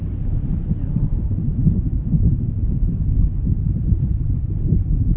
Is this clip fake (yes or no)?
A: yes